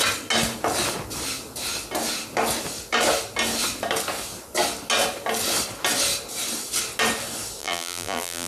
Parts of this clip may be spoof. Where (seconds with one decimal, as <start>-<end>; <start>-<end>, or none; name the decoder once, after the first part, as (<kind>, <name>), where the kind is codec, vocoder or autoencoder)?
7.6-8.5 (vocoder, BigVGAN v2)